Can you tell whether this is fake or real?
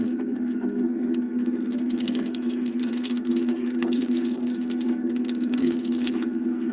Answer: fake